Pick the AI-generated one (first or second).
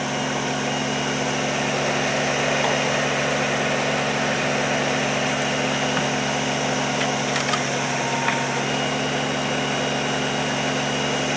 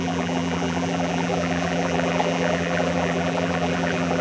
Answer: second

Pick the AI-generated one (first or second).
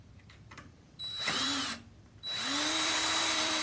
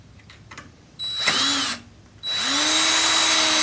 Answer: first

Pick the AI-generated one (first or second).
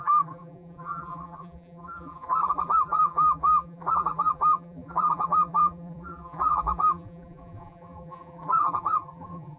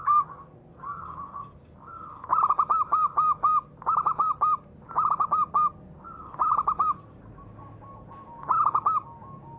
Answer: first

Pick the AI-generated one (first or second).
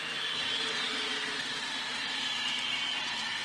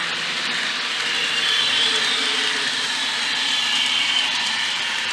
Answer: second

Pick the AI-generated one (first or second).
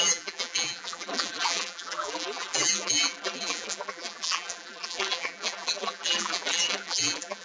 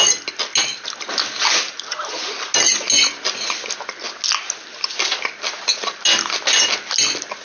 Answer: first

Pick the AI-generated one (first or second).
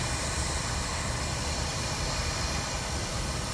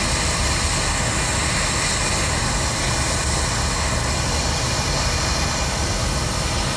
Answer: first